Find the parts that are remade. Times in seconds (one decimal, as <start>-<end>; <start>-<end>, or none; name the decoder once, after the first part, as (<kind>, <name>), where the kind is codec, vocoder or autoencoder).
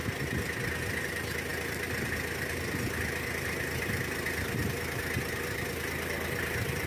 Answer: none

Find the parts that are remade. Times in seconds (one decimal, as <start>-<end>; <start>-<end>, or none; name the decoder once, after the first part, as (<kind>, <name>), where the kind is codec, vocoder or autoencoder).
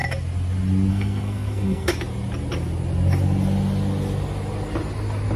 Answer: 0.9-1.9 (codec, SNAC)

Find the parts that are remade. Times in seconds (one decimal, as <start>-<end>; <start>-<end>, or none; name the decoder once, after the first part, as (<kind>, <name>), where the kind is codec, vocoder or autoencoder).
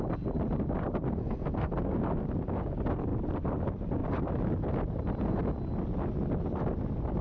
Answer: 1.2-1.7 (codec, SNAC)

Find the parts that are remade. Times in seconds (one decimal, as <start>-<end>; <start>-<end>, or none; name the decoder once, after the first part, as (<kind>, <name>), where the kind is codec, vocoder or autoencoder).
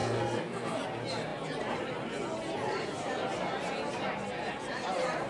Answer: 0.0-0.8 (codec, SNAC)